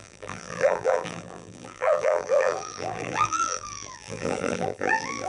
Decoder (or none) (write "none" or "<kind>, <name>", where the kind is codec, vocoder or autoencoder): vocoder, BigVGAN v2